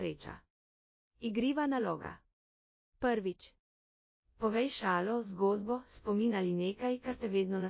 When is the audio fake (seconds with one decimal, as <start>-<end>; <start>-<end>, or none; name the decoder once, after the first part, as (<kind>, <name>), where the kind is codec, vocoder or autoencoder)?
0.0-1.3 (vocoder, WaveNeXt); 1.8-2.2; 3.6-7.7